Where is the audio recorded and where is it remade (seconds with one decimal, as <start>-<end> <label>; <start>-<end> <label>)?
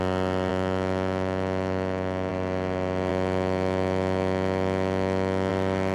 0.0-0.5 recorded; 0.5-2.3 remade; 2.3-3.1 recorded; 3.1-5.5 remade; 5.5-5.9 recorded